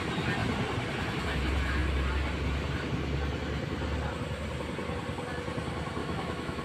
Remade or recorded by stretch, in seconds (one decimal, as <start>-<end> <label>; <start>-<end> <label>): 0.0-6.0 recorded; 6.0-6.6 remade